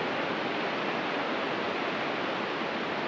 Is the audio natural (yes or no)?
yes